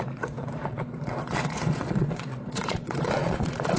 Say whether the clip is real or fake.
fake